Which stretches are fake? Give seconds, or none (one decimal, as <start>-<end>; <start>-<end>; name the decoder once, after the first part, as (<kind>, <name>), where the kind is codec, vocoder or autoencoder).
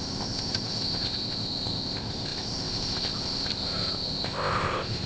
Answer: 0.0-5.1 (codec, ZipCodec)